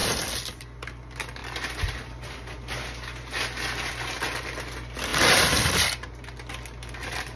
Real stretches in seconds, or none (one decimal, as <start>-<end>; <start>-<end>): 0.0-7.4